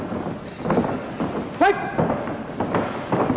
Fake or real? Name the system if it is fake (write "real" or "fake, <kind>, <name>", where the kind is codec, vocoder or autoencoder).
real